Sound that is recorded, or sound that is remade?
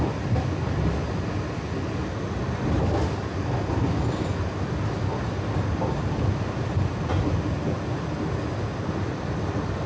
recorded